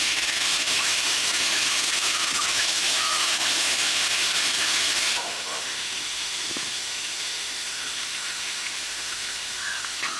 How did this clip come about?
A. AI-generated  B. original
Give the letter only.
A